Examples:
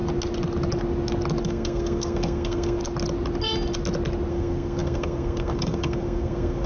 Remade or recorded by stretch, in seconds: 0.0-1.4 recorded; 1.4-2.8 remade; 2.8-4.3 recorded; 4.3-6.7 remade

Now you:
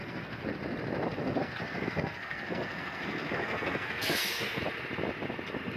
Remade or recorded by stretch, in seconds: 0.0-0.5 remade; 0.5-1.1 recorded; 1.1-4.6 remade; 4.6-5.8 recorded

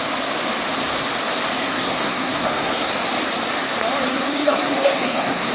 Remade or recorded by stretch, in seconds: 0.0-1.6 recorded; 1.6-2.9 remade; 2.9-4.1 recorded; 4.1-5.5 remade

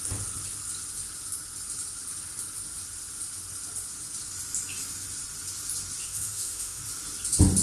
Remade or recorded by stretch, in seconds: 0.0-6.0 recorded; 6.0-6.8 remade; 6.8-7.6 recorded

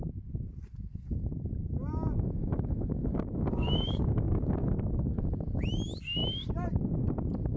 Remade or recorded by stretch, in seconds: 0.0-2.5 recorded; 2.5-4.9 remade; 4.9-7.6 recorded

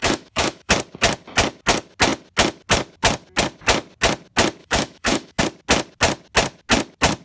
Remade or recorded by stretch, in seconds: 0.0-0.7 remade; 0.7-4.6 recorded; 4.6-5.4 remade; 5.4-7.2 recorded

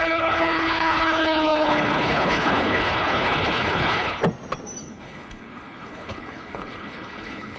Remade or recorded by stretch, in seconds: 0.0-4.2 remade; 4.2-4.8 recorded; 4.8-7.6 remade

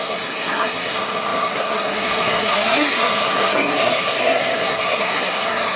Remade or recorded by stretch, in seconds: 0.0-5.8 remade